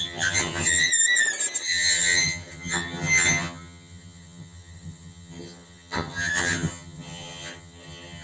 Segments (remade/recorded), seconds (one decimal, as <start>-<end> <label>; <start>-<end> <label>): 0.0-0.9 remade; 0.9-1.6 recorded; 1.6-8.2 remade